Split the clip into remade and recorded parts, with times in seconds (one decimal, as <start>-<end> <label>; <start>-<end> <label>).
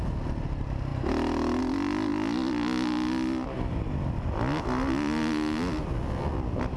0.0-6.8 recorded